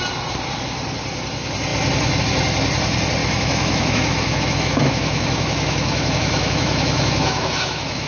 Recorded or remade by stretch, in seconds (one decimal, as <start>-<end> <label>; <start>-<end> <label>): 0.0-3.2 recorded; 3.2-8.1 remade